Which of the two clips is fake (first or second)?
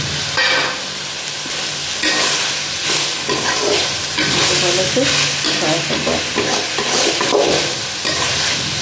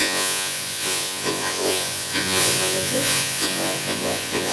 second